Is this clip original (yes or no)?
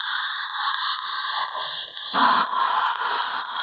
yes